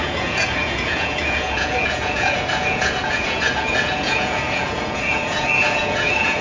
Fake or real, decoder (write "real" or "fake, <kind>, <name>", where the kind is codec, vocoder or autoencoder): fake, vocoder, Vocos